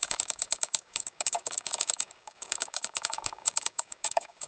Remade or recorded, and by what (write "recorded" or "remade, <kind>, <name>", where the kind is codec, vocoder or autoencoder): remade, codec, DAC